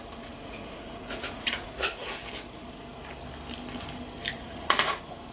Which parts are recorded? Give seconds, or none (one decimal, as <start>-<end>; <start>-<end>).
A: 2.2-4.3